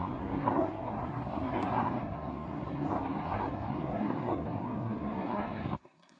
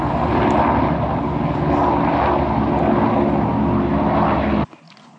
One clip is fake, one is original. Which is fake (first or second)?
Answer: first